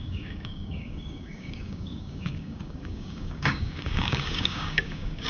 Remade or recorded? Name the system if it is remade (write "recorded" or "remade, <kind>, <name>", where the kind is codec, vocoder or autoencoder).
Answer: remade, codec, DAC